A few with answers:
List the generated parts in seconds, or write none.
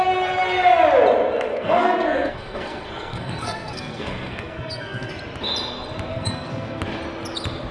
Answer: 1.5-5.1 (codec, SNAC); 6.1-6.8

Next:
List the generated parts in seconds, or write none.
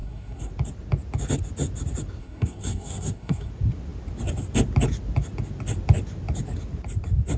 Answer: 0.0-0.5 (codec, SNAC); 2.2-3.5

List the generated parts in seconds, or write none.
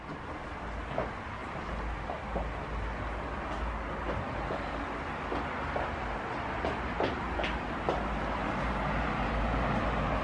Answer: none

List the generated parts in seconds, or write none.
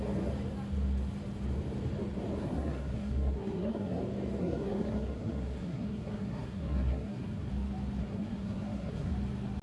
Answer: 2.4-4.0 (codec, SNAC); 4.4-7.5; 8.0-9.1